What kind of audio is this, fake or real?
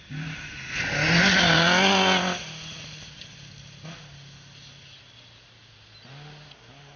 real